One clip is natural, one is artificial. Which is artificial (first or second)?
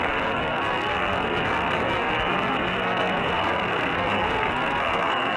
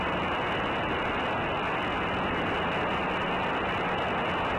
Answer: first